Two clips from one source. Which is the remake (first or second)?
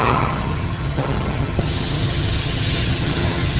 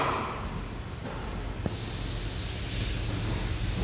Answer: first